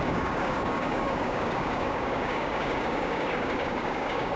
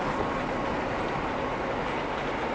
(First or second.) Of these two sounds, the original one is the second